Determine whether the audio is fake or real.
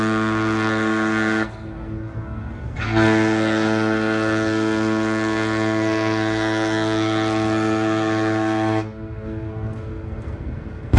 fake